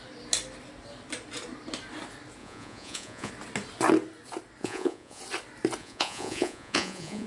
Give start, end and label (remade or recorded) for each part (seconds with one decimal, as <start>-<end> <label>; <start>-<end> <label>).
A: 0.0-2.4 recorded; 2.4-3.3 remade; 3.3-4.6 recorded; 4.6-5.2 remade; 5.2-5.8 recorded; 5.8-7.3 remade